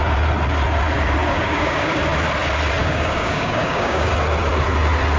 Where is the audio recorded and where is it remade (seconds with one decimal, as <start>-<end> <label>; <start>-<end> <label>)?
0.0-1.3 recorded; 1.3-2.0 remade; 2.0-2.8 recorded; 2.8-4.1 remade; 4.1-5.2 recorded